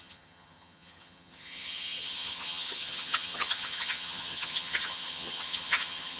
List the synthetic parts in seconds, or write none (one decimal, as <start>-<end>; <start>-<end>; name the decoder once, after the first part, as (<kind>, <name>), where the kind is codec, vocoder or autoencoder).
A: 0.0-6.2 (vocoder, HiFi-GAN)